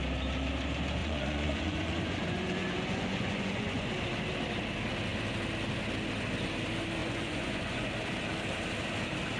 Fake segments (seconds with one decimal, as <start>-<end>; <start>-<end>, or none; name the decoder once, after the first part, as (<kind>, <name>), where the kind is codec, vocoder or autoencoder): 1.0-3.9 (vocoder, Vocos); 7.0-7.9